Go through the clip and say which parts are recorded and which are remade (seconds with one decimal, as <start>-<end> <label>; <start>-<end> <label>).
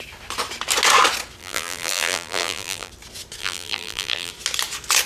0.0-1.4 recorded; 1.4-2.9 remade; 2.9-3.4 recorded; 3.4-4.3 remade; 4.3-5.1 recorded